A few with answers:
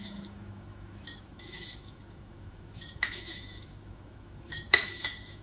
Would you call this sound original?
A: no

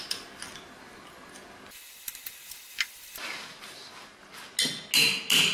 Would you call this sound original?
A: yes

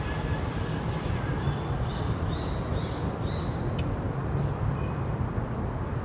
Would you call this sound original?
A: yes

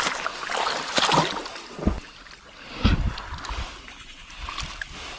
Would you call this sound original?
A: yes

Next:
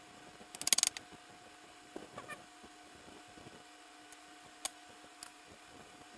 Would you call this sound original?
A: yes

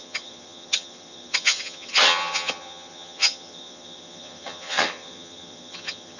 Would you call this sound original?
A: no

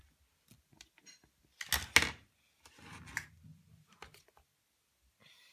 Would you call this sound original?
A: yes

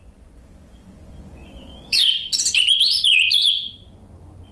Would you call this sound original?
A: no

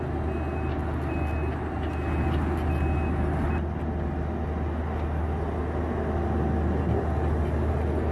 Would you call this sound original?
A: yes